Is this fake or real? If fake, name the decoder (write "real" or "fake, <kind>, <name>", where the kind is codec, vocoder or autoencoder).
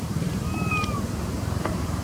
fake, vocoder, BigVGAN v2